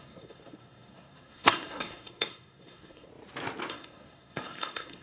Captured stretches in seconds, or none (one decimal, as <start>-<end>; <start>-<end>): 3.1-3.7